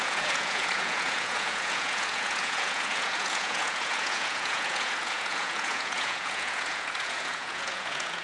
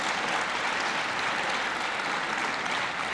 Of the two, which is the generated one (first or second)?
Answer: first